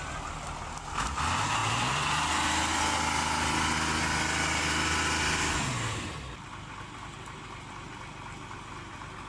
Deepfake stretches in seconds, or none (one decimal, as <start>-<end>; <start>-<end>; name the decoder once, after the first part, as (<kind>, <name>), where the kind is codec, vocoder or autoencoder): 1.6-2.3 (vocoder, BigVGAN v2)